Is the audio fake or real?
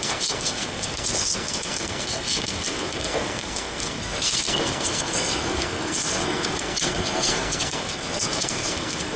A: fake